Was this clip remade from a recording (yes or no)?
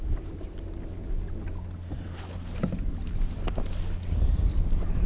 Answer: no